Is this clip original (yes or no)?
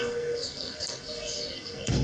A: no